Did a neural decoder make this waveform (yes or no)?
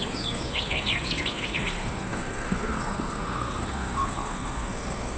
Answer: yes